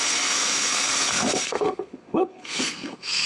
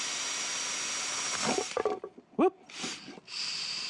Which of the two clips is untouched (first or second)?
second